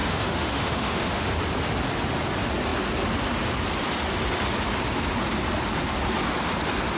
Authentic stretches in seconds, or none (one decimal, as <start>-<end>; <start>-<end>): 1.3-7.0

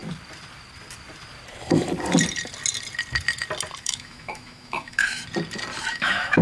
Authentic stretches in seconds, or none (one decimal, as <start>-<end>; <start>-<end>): 0.0-3.8; 5.2-5.9

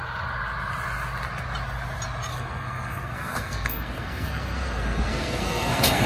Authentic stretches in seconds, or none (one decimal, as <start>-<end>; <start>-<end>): 0.0-2.3

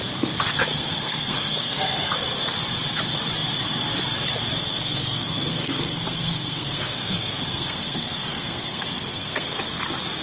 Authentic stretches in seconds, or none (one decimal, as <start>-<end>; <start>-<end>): 0.0-0.7; 2.1-4.6; 9.5-10.2

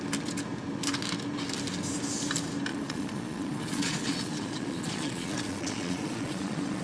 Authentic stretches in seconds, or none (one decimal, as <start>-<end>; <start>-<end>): 0.0-2.7